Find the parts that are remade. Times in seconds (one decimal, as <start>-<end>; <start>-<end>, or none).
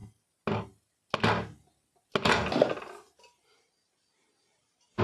none